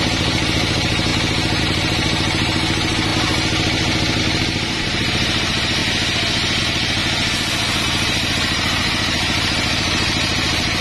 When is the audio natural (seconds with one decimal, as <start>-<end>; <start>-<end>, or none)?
1.1-1.6; 3.1-4.2; 5.8-6.6; 7.0-7.8